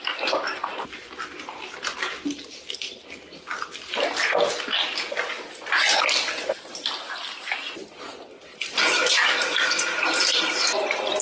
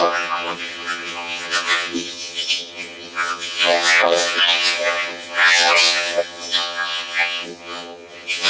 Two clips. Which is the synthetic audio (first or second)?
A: second